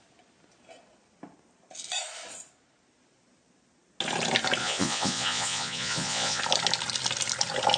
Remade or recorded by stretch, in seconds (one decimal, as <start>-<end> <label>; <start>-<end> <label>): 0.0-4.6 recorded; 4.6-6.4 remade; 6.4-7.8 recorded